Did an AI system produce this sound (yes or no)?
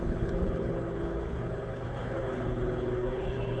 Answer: yes